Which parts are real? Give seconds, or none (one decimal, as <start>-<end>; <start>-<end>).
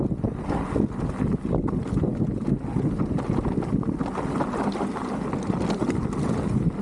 0.0-6.8